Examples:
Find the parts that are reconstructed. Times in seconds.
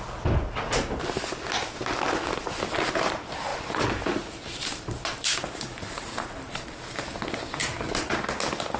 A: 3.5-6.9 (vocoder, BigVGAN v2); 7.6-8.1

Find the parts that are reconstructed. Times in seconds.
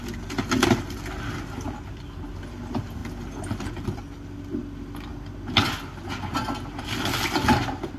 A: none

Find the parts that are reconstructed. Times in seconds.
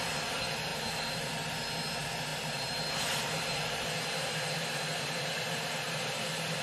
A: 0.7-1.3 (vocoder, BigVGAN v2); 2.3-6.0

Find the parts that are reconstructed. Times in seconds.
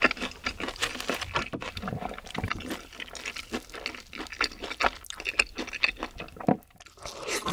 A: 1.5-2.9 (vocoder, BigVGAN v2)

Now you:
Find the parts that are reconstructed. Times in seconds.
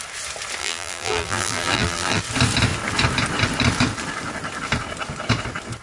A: 0.6-2.2 (vocoder, BigVGAN v2)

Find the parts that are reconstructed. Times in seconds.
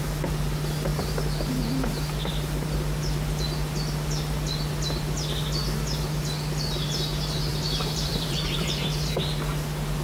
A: 7.5-8.9 (vocoder, BigVGAN v2)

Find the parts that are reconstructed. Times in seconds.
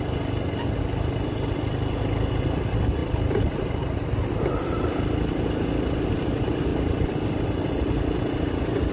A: 3.0-3.8 (vocoder, BigVGAN v2); 6.7-7.4